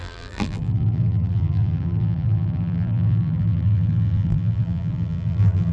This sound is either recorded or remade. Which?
remade